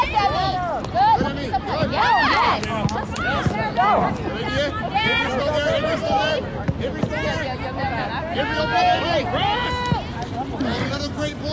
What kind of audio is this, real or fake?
real